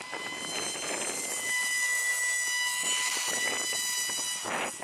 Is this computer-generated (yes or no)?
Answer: no